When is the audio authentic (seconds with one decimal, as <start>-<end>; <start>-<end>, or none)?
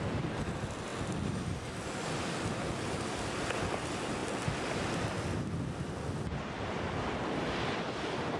0.0-8.4